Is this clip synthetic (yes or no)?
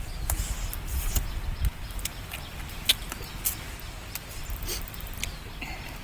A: no